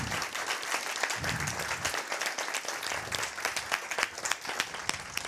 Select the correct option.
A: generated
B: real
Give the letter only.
B